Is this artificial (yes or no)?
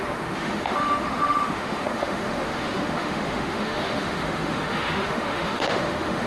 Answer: yes